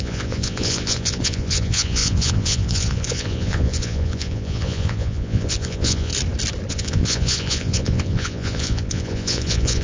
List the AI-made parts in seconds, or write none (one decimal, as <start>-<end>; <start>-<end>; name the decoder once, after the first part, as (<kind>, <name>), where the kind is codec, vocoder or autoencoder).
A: 0.0-6.1 (vocoder, Vocos); 6.7-9.8